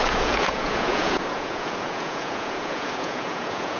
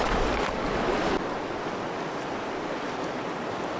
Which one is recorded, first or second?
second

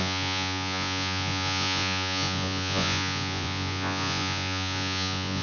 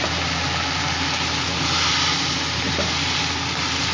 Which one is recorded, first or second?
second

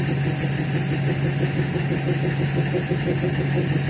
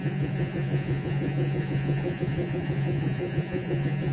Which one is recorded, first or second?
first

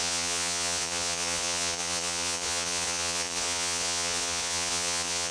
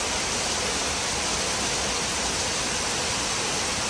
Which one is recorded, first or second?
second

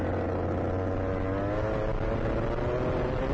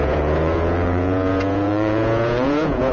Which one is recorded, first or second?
first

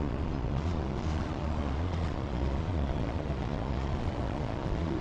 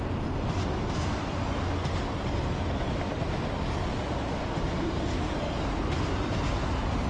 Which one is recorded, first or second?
second